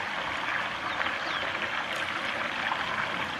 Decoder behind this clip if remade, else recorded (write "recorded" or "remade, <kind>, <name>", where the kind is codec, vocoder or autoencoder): recorded